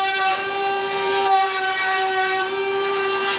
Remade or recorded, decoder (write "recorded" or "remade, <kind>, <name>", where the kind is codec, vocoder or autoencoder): remade, vocoder, BigVGAN v2